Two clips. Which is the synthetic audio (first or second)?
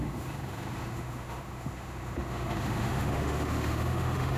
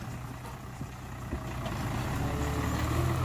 first